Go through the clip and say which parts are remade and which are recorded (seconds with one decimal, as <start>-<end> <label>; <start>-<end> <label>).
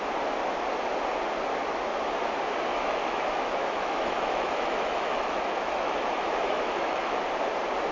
0.0-2.7 recorded; 2.7-7.2 remade; 7.2-7.9 recorded